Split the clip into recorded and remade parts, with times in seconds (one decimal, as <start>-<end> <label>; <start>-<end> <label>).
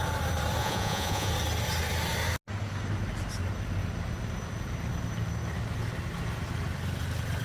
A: 0.0-0.6 recorded; 0.6-1.3 remade; 1.3-7.4 recorded